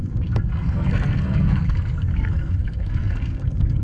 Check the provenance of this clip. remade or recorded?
remade